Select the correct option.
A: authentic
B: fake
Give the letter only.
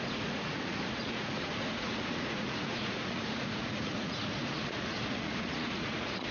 B